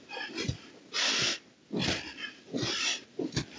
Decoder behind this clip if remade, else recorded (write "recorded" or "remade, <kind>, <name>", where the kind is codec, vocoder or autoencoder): recorded